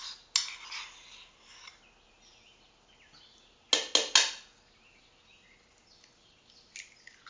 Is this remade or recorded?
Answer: recorded